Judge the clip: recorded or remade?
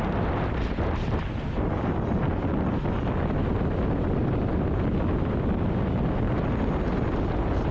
recorded